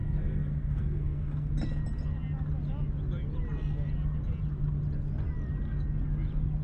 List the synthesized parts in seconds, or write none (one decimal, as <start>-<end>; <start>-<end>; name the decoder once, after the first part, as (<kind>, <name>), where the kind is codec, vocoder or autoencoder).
0.0-1.5 (codec, SNAC)